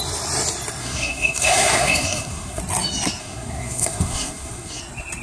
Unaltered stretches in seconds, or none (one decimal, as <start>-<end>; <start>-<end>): 0.0-0.8; 2.6-3.2; 4.8-5.2